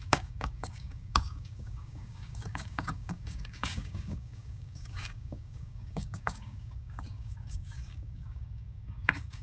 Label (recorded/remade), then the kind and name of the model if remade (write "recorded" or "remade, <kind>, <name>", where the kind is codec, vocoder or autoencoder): remade, codec, DAC